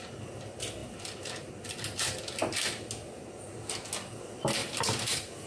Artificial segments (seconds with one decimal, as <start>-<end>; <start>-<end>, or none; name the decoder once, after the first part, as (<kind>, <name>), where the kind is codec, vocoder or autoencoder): 4.6-5.5 (vocoder, BigVGAN v2)